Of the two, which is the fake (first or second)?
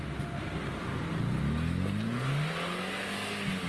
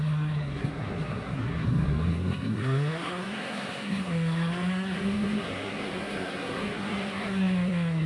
second